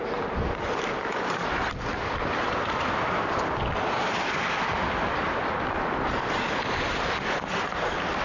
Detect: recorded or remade recorded